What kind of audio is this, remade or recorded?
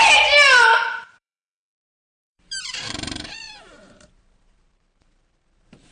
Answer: remade